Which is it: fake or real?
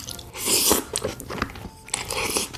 real